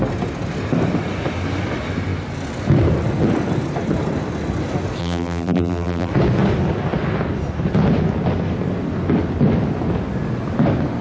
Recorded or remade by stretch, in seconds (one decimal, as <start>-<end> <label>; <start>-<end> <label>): 0.0-5.0 recorded; 5.0-6.1 remade; 6.1-11.0 recorded